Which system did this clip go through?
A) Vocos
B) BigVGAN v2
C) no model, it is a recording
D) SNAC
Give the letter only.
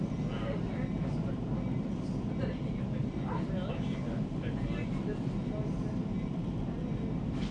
C